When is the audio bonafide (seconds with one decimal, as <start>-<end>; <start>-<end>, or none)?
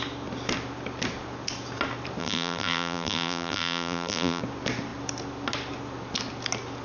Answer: 0.0-2.2; 4.4-6.8